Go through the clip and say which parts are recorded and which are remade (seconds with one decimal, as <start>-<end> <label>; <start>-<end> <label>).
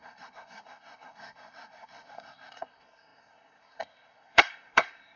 0.0-5.2 remade